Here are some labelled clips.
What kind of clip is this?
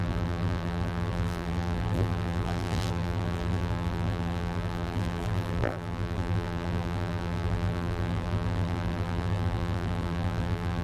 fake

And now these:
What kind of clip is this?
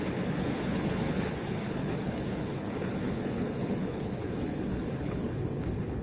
fake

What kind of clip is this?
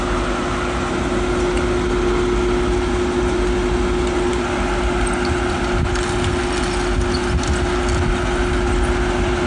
real